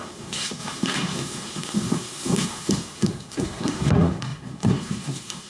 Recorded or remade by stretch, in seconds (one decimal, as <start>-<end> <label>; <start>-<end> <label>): 0.0-5.5 remade